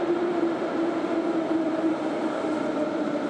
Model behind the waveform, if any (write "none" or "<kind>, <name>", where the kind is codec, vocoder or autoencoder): vocoder, BigVGAN v2